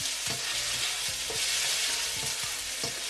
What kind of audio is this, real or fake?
real